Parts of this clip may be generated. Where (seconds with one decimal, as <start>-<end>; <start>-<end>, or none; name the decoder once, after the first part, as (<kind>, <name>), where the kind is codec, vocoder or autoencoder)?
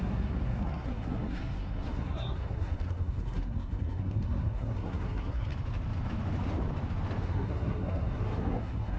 0.0-5.5 (codec, SNAC); 7.2-9.0